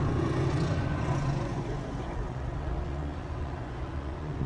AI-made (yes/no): yes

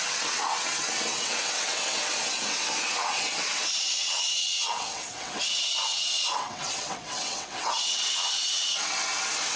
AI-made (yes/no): yes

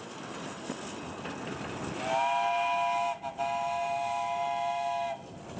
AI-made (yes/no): no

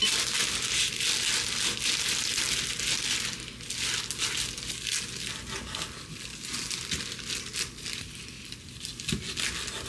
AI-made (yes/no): no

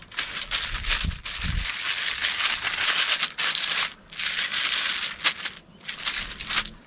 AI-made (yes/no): no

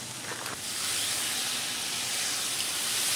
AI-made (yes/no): no